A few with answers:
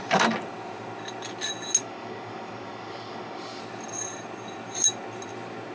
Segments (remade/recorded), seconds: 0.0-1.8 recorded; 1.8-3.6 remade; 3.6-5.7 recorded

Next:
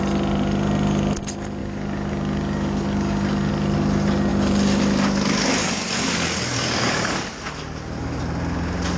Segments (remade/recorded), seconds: 0.0-1.6 recorded; 1.6-3.5 remade; 3.5-5.6 recorded; 5.6-8.2 remade; 8.2-9.0 recorded

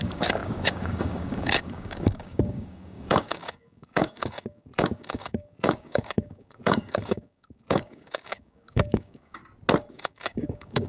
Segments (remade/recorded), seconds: 0.0-9.4 remade; 9.4-9.9 recorded; 9.9-10.9 remade

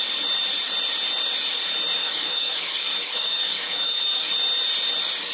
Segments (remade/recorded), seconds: 0.0-2.0 recorded; 2.0-4.3 remade; 4.3-5.3 recorded

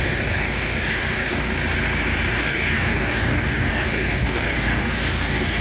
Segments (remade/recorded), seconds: 0.0-1.5 remade; 1.5-2.3 recorded; 2.3-5.6 remade

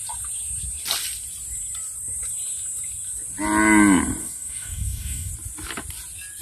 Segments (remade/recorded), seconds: 0.0-4.2 recorded; 4.2-5.3 remade; 5.3-6.4 recorded

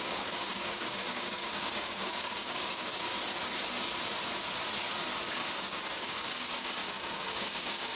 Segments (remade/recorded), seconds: 0.0-3.1 remade; 3.1-5.6 recorded; 5.6-8.0 remade

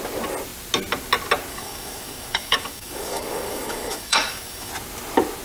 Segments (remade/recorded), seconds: 0.0-1.5 recorded; 1.5-4.7 remade; 4.7-5.4 recorded